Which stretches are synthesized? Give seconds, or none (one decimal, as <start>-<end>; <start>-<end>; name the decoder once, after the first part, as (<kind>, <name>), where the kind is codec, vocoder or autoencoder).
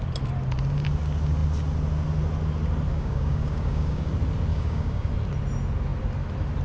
2.9-4.1 (codec, DAC); 4.5-5.1